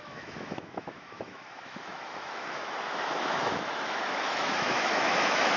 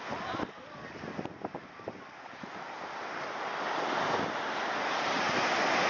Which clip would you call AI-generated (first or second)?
first